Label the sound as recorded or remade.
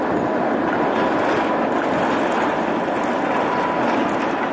recorded